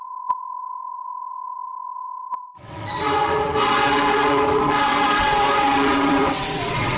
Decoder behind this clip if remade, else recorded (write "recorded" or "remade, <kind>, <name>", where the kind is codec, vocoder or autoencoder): remade, vocoder, WaveNeXt